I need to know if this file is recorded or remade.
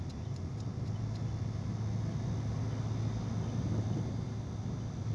recorded